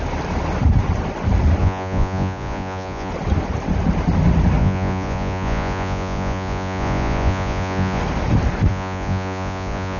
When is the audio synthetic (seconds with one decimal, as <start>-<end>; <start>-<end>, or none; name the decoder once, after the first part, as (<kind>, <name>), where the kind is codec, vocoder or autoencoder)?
1.6-3.1 (vocoder, Vocos); 4.6-8.0; 8.7-10.0